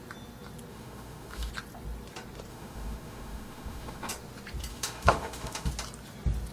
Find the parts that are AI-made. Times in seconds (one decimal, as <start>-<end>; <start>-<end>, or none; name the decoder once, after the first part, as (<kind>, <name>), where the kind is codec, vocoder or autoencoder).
0.7-1.5 (autoencoder, DAC-VAE); 2.5-4.1; 4.7-5.7